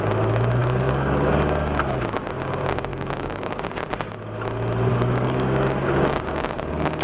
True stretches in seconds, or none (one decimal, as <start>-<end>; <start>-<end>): 0.0-0.6; 1.3-2.9; 3.9-4.9